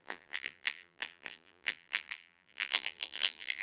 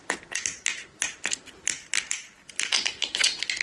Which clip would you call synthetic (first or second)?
first